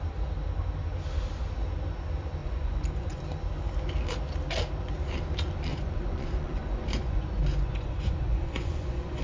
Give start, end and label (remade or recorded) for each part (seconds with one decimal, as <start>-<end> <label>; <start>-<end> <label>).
0.0-2.4 recorded; 2.4-3.2 remade; 3.2-5.7 recorded; 5.7-9.2 remade